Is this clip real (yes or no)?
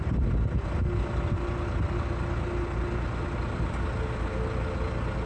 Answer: yes